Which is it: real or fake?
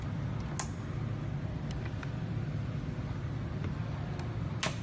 real